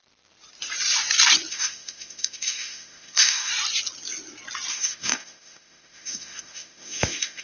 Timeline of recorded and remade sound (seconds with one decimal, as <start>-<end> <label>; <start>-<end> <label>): 0.0-1.5 recorded; 1.5-3.5 remade; 3.5-4.7 recorded; 4.7-7.4 remade